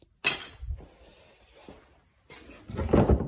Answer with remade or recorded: recorded